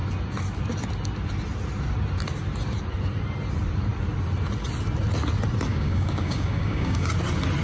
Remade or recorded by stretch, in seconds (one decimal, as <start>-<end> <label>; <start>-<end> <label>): 0.0-5.7 recorded; 5.7-7.1 remade; 7.1-7.6 recorded